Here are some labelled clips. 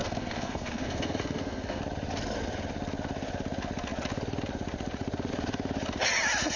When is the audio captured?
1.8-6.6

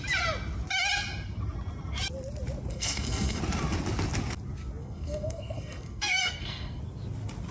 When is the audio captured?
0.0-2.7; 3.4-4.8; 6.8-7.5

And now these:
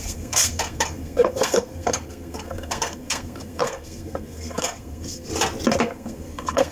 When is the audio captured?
5.3-5.8

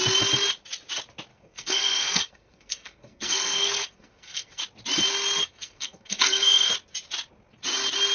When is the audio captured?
0.0-1.3; 4.6-5.4; 6.7-8.1

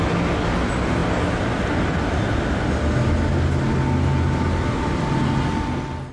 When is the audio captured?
0.0-6.1

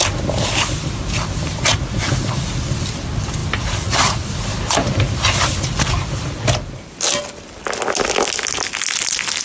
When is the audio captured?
0.0-9.4

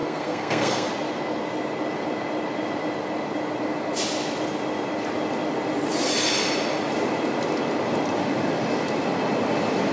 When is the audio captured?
0.9-9.9